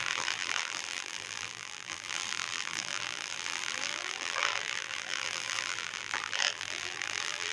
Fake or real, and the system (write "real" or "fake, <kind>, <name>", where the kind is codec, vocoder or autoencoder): fake, vocoder, BigVGAN v2